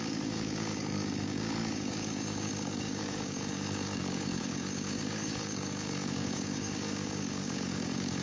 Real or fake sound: fake